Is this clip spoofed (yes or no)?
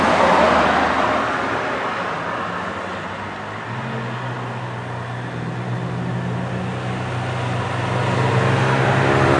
no